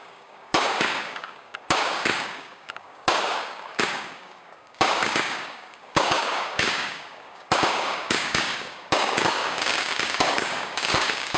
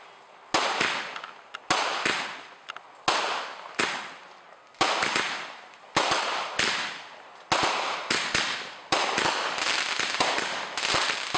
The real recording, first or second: second